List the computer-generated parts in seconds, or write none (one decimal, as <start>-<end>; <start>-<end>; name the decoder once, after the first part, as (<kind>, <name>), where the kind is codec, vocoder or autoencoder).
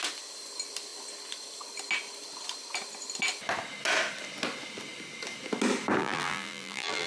6.0-7.1 (vocoder, BigVGAN v2)